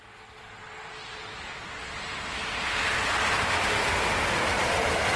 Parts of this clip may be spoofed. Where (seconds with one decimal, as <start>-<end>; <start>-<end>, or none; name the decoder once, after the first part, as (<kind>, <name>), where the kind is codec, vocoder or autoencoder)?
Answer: none